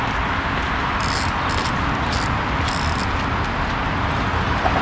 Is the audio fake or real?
real